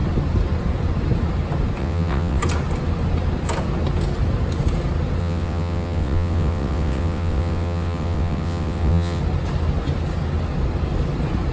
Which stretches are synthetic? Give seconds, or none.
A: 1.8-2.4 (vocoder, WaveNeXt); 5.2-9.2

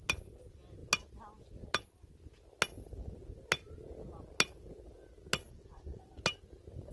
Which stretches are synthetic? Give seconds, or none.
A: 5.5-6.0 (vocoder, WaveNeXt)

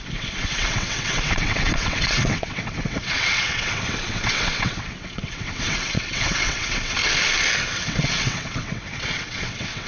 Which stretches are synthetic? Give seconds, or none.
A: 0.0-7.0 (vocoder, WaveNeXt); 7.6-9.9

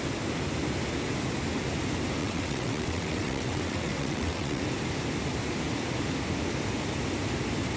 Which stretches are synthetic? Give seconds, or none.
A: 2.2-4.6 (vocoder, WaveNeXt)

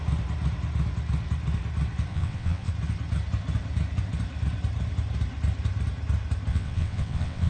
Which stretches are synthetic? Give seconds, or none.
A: 2.1-2.7 (vocoder, WaveNeXt); 6.5-7.5